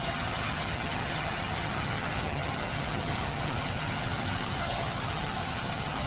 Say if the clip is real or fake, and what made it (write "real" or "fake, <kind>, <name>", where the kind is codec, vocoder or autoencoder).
fake, vocoder, HiFi-GAN